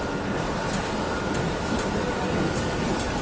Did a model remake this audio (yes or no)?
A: no